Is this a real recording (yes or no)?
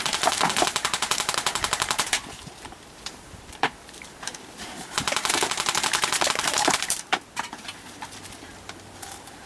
no